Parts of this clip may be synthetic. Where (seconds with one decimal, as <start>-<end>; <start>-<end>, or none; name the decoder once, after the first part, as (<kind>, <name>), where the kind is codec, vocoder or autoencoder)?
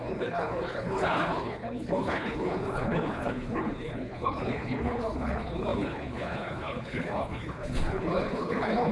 0.0-8.9 (codec, HILCodec)